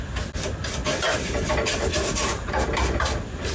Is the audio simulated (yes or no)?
no